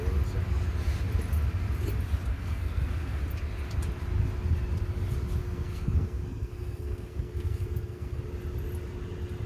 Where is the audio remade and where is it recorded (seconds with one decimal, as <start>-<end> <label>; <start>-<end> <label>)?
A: 0.0-2.3 recorded; 2.3-3.2 remade; 3.2-5.4 recorded; 5.4-8.2 remade; 8.2-9.5 recorded